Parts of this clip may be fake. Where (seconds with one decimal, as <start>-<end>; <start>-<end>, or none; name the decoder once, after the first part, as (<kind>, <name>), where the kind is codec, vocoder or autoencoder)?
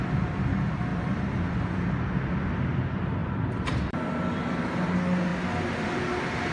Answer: 0.9-1.5 (vocoder, BigVGAN v2); 3.2-4.4